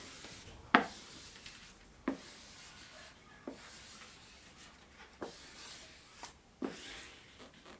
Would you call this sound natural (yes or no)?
yes